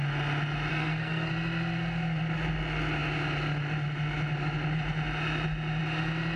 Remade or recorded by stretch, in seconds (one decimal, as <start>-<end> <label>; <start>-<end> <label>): 0.0-0.7 recorded; 0.7-1.3 remade; 1.3-6.4 recorded